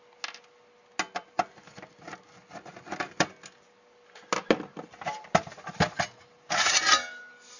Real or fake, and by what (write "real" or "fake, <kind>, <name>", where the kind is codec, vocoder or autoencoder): real